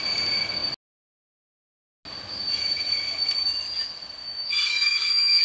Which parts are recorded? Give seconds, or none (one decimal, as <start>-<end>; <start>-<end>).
0.0-4.2